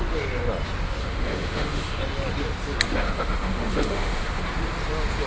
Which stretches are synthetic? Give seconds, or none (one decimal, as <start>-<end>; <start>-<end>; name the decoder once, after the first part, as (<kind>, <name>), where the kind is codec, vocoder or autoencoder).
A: 1.0-2.0 (autoencoder, DAC-VAE); 2.9-4.4